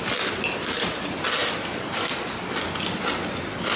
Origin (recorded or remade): recorded